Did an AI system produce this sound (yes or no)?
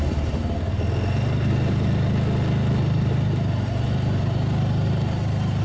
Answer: no